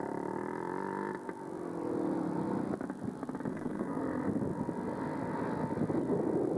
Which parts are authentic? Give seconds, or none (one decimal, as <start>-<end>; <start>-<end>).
0.0-3.5; 4.0-6.6